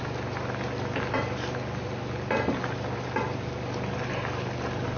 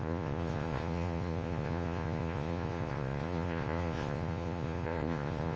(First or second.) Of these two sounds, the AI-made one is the second